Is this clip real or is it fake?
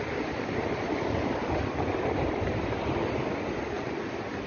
real